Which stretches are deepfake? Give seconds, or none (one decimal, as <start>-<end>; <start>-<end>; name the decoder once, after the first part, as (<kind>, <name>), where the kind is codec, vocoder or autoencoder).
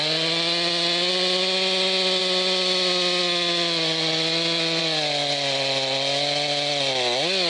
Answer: none